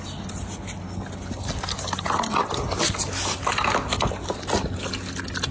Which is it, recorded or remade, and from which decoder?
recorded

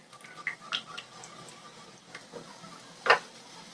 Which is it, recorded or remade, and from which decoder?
recorded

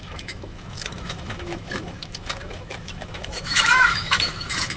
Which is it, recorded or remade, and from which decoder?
remade, autoencoder, DAC-VAE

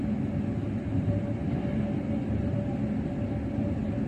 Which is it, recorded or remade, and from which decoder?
recorded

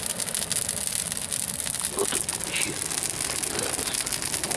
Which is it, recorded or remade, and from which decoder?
recorded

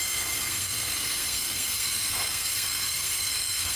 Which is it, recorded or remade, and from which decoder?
remade, codec, SNAC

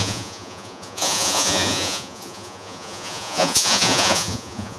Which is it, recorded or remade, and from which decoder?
remade, vocoder, Vocos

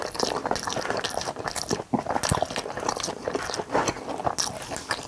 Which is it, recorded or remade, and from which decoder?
recorded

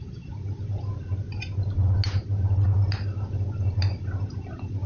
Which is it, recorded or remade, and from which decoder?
recorded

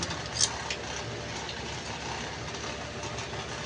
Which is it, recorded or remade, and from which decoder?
recorded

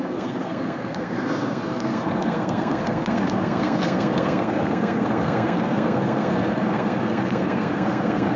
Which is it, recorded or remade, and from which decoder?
remade, codec, SNAC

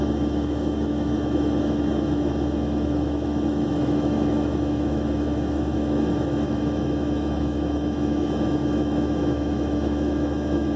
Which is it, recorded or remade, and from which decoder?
remade, autoencoder, DAC-VAE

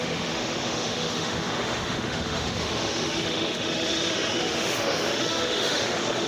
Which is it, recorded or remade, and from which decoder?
remade, autoencoder, DAC-VAE